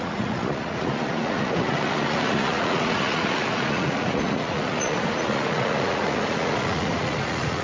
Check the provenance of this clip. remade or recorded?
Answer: remade